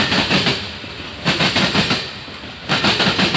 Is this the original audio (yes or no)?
yes